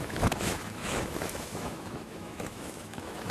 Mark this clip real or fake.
fake